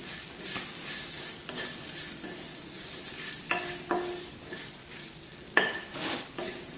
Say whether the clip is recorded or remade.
recorded